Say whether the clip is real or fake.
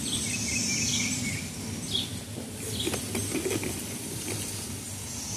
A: real